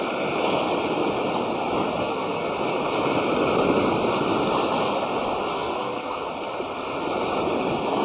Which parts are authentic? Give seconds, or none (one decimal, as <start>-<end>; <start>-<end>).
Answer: 0.0-2.0; 2.5-5.5; 6.3-8.0